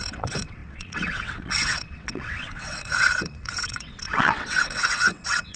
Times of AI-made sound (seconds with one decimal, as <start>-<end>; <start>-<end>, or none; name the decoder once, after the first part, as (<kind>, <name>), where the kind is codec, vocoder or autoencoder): 0.0-5.6 (vocoder, WaveNeXt)